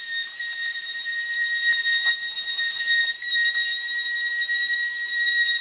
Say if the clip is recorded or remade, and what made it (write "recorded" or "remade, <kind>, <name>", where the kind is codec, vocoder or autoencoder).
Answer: recorded